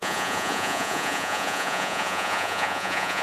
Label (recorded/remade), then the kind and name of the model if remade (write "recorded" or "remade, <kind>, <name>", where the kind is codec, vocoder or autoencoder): remade, vocoder, Vocos